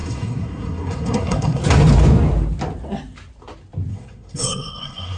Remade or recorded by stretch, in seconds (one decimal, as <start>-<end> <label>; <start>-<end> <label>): 0.0-1.6 remade; 1.6-3.9 recorded; 3.9-5.2 remade